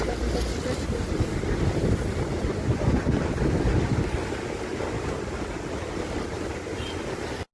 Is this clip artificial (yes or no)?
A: no